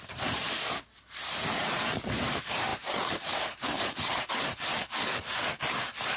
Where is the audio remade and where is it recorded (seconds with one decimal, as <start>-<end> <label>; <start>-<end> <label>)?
0.0-6.2 remade